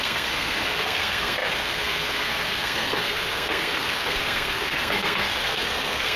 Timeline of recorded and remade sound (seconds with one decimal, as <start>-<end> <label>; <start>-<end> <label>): 0.0-6.2 remade

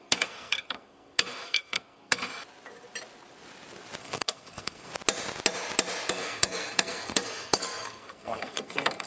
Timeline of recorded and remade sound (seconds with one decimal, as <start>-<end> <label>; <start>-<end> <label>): 0.0-2.3 remade; 2.3-4.0 recorded; 4.0-4.9 remade; 4.9-6.1 recorded; 6.1-9.1 remade

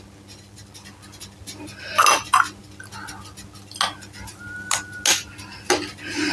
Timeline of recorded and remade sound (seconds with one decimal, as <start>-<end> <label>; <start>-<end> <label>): 0.0-6.3 recorded

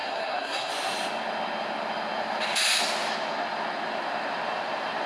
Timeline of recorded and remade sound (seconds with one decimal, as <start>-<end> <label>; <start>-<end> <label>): 0.0-0.7 remade; 0.7-5.1 recorded

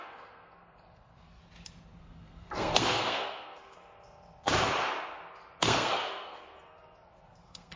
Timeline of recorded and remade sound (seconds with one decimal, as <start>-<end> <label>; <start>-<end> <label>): 0.0-1.4 remade; 1.4-2.0 recorded; 2.0-3.8 remade; 3.8-5.6 recorded; 5.6-7.8 remade

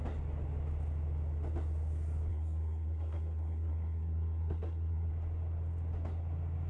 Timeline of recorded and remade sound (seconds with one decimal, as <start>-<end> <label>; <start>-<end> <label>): 0.0-2.3 recorded; 2.3-5.1 remade; 5.1-6.7 recorded

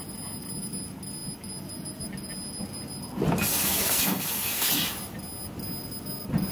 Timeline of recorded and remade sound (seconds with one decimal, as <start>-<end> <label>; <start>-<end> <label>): 0.0-3.5 recorded; 3.5-4.7 remade; 4.7-6.5 recorded